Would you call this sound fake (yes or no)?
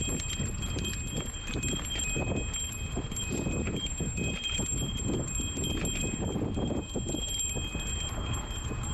no